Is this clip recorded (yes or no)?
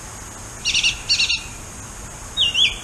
yes